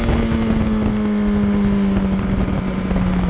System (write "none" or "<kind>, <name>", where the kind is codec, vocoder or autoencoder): none